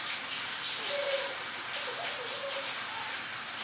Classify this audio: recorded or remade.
recorded